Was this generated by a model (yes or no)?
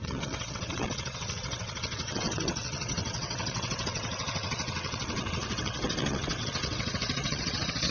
yes